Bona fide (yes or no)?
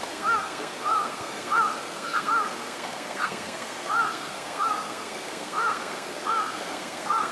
no